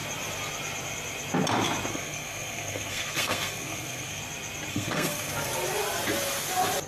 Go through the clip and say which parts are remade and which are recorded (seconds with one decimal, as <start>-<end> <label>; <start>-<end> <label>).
0.0-1.9 recorded; 1.9-4.2 remade; 4.2-4.7 recorded; 4.7-5.5 remade; 5.5-6.9 recorded